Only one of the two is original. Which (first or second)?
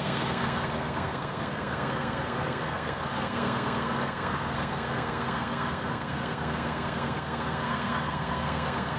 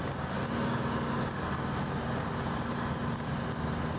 second